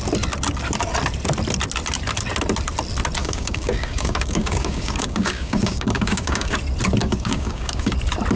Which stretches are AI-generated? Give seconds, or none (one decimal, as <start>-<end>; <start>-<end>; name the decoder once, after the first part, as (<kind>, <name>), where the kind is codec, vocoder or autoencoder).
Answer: 3.2-6.6 (codec, DAC); 7.0-7.9